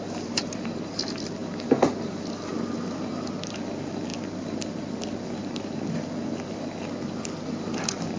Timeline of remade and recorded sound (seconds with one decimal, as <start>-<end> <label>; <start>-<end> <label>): 0.0-8.2 recorded